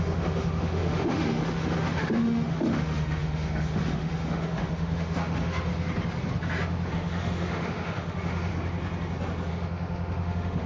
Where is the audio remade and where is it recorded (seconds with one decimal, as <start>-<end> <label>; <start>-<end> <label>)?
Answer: 0.0-5.7 remade; 5.7-6.9 recorded; 6.9-8.5 remade; 8.5-9.5 recorded; 9.5-10.7 remade